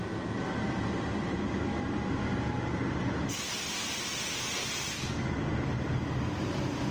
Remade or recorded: recorded